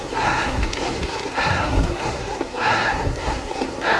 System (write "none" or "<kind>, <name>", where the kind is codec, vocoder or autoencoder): codec, SNAC